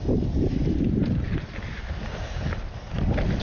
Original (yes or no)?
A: yes